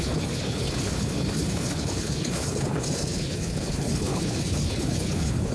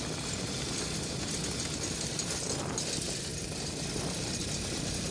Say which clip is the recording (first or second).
second